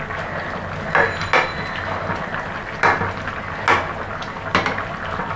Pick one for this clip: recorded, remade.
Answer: recorded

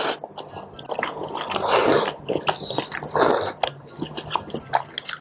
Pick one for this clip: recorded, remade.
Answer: recorded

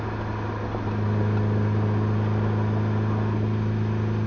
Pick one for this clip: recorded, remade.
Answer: recorded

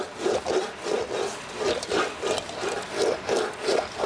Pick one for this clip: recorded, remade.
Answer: recorded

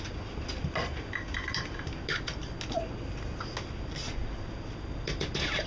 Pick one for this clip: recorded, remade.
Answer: recorded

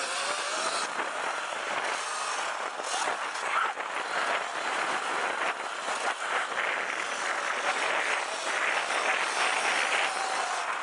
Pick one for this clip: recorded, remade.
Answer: recorded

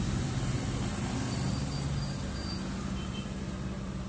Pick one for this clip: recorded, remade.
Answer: recorded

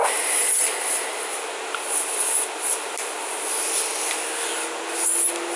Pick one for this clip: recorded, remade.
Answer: recorded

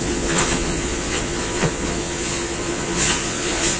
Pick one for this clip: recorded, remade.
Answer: remade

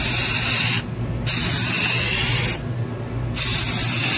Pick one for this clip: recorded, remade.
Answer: recorded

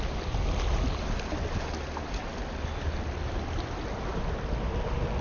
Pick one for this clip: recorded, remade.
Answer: recorded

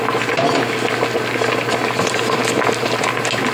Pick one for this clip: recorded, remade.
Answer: recorded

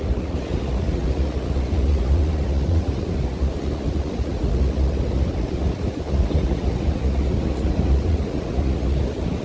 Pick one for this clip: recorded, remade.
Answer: remade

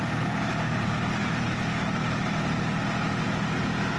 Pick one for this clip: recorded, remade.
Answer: recorded